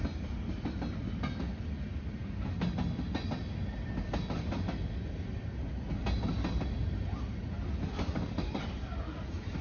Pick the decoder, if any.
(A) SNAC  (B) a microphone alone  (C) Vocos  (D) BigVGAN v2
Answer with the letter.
B